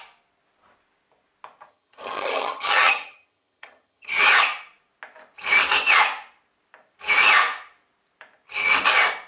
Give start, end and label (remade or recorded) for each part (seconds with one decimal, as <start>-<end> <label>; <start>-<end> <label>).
0.0-1.7 recorded; 1.7-4.2 remade; 4.2-9.3 recorded